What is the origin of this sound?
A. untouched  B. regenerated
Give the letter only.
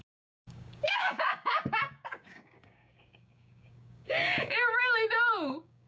B